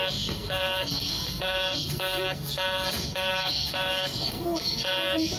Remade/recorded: remade